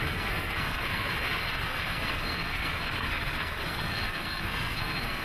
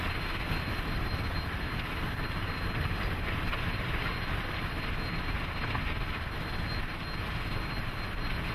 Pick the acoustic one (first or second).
second